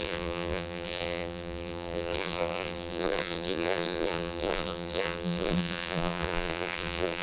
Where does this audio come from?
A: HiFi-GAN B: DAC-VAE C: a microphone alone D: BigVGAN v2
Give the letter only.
D